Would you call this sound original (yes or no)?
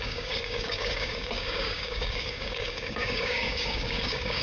no